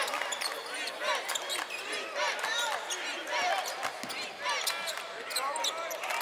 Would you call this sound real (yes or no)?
yes